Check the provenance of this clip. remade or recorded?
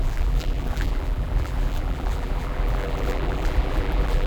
remade